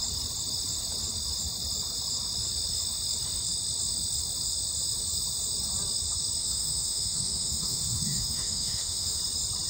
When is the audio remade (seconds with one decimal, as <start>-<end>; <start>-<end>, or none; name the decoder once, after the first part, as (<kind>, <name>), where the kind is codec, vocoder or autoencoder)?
6.4-9.2 (autoencoder, DAC-VAE)